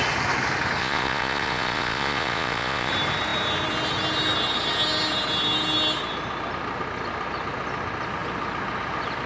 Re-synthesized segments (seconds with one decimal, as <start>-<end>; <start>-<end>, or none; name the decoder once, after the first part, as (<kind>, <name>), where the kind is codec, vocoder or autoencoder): 0.8-2.9 (vocoder, Vocos)